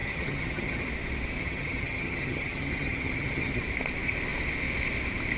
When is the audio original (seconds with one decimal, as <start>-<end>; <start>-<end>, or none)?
0.9-1.4; 3.6-5.4